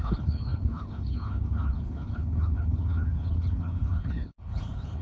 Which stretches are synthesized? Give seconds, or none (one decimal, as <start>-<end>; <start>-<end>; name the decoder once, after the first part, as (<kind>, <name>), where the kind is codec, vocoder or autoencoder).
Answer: 0.0-5.0 (codec, HILCodec)